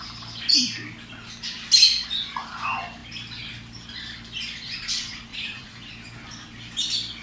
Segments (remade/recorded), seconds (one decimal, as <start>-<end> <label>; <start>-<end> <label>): 0.0-5.3 recorded; 5.3-5.9 remade; 5.9-7.2 recorded